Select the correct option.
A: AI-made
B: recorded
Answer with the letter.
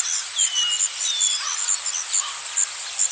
B